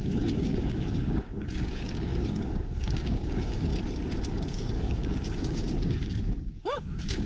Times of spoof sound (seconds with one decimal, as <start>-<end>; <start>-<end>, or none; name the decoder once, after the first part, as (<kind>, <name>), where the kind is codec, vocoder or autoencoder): 0.0-3.7 (codec, DAC); 4.3-7.3